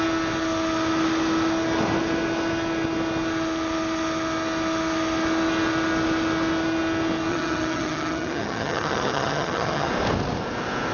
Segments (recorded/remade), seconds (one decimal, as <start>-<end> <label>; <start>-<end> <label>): 0.0-7.3 recorded; 7.3-9.9 remade; 9.9-10.9 recorded